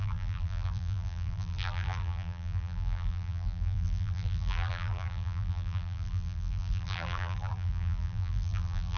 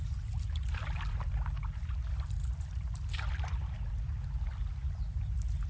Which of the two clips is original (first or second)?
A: second